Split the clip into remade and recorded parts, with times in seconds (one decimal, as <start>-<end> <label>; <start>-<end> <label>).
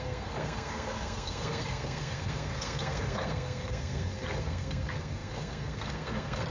0.0-6.5 remade